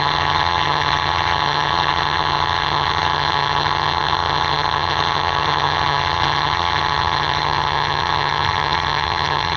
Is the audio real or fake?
fake